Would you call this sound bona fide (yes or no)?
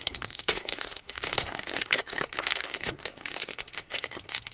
no